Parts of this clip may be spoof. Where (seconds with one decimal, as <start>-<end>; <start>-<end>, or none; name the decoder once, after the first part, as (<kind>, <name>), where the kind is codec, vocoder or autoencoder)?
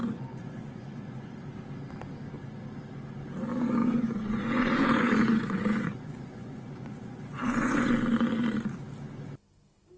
0.0-1.3 (vocoder, Vocos); 3.8-7.9